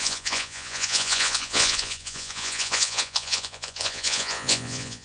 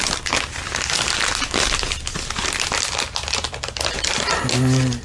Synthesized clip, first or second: first